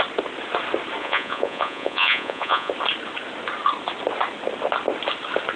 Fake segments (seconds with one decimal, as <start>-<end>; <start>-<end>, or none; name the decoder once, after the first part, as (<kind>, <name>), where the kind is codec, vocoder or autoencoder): 1.0-2.7 (vocoder, Vocos)